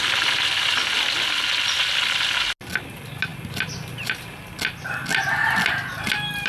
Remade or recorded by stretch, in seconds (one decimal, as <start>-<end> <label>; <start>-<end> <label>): 0.0-6.5 recorded